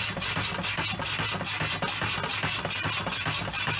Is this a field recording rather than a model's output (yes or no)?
yes